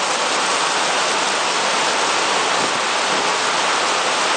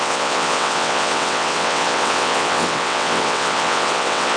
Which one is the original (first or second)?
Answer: first